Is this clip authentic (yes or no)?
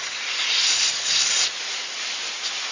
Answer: yes